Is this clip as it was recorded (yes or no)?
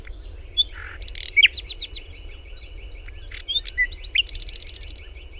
yes